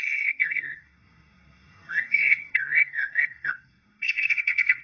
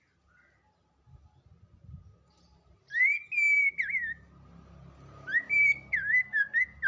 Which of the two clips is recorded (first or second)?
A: second